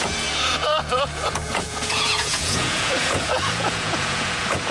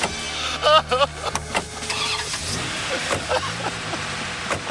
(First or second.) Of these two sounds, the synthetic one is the first